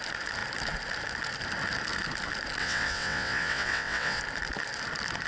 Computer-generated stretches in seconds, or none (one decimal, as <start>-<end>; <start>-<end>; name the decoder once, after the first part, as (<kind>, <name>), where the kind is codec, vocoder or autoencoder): 2.6-4.2 (vocoder, WaveNeXt)